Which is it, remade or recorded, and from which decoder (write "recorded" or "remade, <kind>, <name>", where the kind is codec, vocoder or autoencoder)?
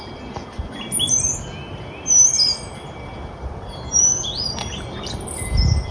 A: recorded